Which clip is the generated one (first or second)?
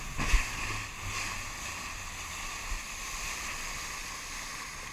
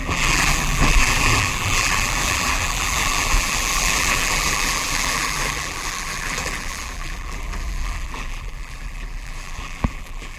second